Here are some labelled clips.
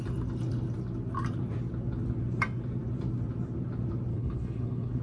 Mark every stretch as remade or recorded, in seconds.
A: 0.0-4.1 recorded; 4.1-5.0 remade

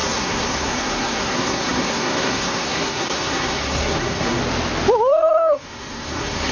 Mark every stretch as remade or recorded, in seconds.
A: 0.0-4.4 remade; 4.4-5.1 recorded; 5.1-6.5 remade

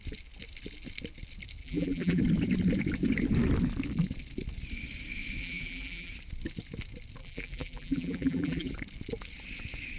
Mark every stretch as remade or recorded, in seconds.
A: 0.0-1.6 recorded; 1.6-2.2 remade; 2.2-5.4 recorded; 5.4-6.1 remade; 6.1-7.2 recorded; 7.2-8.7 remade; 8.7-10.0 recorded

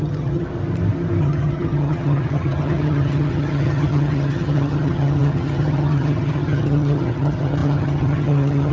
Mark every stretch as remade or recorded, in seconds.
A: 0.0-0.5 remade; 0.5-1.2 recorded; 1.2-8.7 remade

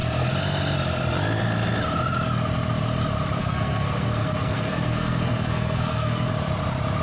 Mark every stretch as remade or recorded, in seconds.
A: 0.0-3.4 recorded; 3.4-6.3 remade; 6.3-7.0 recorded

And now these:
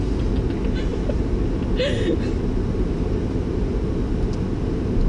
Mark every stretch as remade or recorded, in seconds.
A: 0.0-5.1 recorded

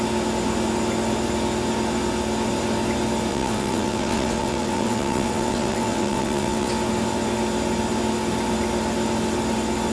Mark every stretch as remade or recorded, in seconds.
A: 0.0-3.3 recorded; 3.3-6.7 remade; 6.7-9.9 recorded